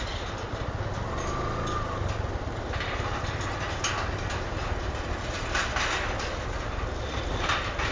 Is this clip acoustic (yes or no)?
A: yes